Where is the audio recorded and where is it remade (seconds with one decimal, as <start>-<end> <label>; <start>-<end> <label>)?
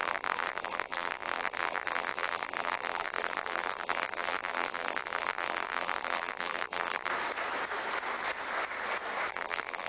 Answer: 0.0-7.1 remade; 7.1-9.3 recorded; 9.3-9.9 remade